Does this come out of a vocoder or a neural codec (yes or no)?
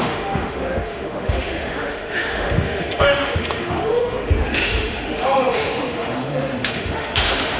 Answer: yes